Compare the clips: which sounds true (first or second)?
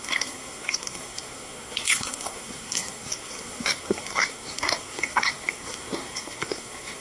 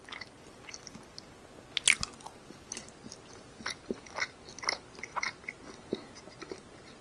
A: second